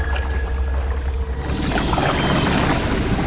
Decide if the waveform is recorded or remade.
recorded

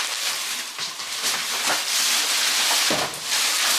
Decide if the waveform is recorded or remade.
recorded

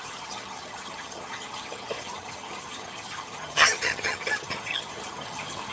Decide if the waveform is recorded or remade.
remade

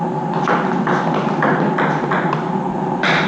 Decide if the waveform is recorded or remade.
recorded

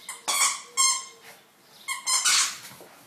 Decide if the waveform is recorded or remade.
recorded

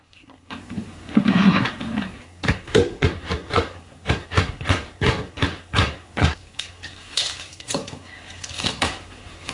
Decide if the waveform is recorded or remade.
remade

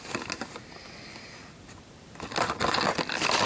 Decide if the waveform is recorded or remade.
recorded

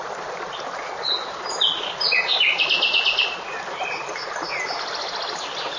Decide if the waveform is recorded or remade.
recorded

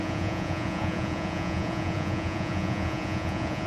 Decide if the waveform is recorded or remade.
remade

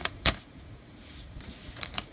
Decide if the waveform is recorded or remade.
remade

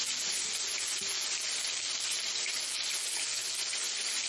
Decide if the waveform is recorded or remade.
recorded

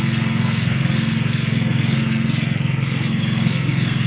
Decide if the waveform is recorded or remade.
remade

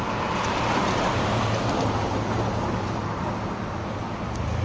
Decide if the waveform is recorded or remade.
recorded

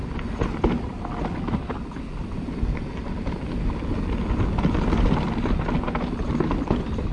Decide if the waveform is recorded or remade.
recorded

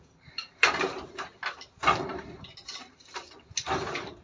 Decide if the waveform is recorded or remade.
remade